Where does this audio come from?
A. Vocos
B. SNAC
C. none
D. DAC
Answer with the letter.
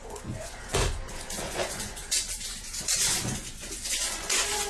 A